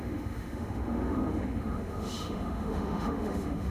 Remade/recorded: remade